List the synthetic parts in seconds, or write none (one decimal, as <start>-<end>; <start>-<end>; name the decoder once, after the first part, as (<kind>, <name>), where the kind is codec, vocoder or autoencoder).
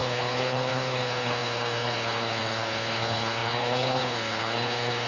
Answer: 0.0-5.1 (codec, HILCodec)